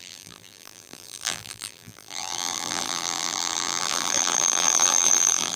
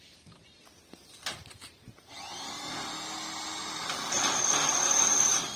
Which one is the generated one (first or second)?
first